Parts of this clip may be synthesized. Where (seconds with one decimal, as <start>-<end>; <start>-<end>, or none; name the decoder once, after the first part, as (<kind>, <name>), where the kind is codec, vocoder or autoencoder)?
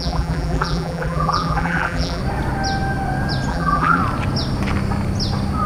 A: 0.0-2.2 (vocoder, BigVGAN v2); 3.5-4.0